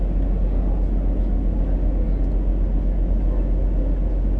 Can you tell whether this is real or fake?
real